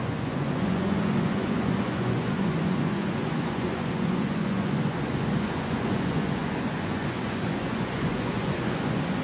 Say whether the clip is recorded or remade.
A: remade